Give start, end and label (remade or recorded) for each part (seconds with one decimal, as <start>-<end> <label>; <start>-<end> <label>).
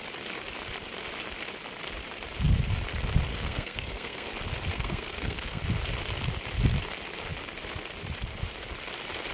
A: 0.0-3.3 recorded; 3.3-4.3 remade; 4.3-4.7 recorded; 4.7-5.6 remade; 5.6-9.3 recorded